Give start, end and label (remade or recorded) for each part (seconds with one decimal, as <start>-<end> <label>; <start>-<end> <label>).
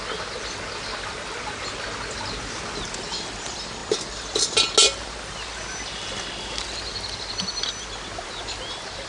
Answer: 0.0-9.1 recorded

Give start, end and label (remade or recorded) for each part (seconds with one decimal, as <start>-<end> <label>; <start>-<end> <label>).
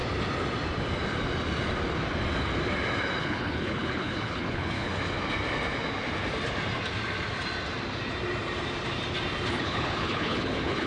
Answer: 0.0-3.2 recorded; 3.2-4.9 remade; 4.9-9.5 recorded; 9.5-10.9 remade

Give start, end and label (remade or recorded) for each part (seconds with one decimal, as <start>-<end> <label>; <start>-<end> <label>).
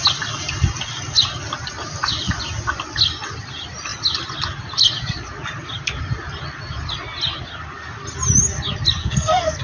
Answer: 0.0-9.0 recorded; 9.0-9.6 remade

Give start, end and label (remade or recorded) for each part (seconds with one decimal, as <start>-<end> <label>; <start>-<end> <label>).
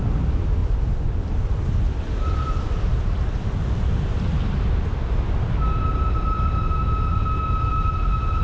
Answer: 0.0-0.6 recorded; 0.6-3.5 remade; 3.5-8.4 recorded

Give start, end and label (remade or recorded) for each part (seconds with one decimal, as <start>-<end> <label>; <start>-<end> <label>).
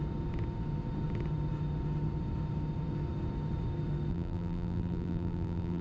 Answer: 0.0-4.1 recorded; 4.1-5.8 remade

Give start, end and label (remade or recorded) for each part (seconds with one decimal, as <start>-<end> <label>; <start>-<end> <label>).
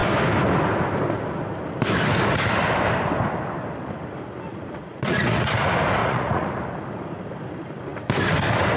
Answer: 0.0-4.5 recorded; 4.5-5.5 remade; 5.5-6.0 recorded; 6.0-6.5 remade; 6.5-8.8 recorded